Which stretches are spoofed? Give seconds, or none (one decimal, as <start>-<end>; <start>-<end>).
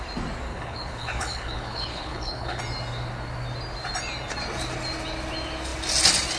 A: 0.5-2.6